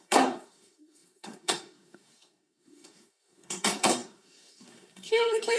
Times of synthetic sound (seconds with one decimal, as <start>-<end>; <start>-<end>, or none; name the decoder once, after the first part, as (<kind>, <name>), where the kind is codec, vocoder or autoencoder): 0.0-5.6 (codec, SNAC)